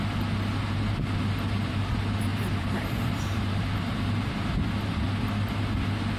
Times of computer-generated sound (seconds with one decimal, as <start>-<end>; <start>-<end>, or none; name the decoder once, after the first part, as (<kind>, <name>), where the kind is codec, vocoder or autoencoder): 0.5-1.9 (vocoder, BigVGAN v2); 2.3-5.7